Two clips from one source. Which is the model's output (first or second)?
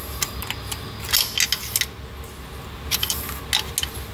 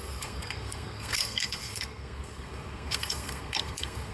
second